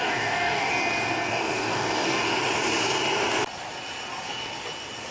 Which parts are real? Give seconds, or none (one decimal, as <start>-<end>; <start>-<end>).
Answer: 0.7-1.3; 2.3-5.1